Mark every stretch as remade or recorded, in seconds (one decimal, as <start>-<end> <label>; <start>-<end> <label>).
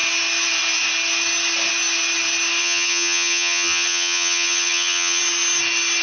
0.0-2.6 recorded; 2.6-5.2 remade; 5.2-6.0 recorded